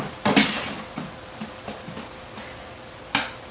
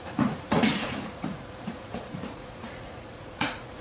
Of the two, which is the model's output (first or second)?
second